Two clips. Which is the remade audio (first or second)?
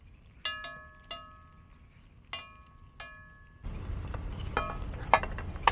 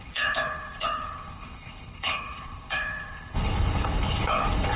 second